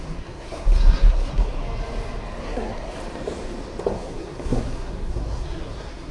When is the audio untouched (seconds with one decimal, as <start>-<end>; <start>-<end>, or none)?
1.6-2.4; 3.0-3.8